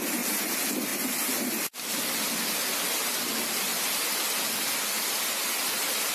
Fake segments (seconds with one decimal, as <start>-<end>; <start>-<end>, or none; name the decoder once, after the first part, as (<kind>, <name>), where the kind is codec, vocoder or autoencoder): none